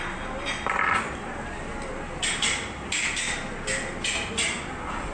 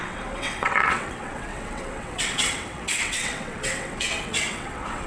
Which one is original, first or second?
first